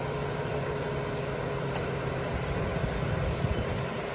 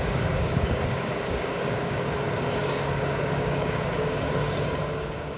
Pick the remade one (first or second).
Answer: second